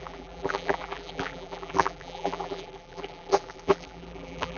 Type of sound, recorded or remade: remade